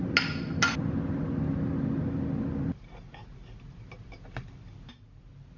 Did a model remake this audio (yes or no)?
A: no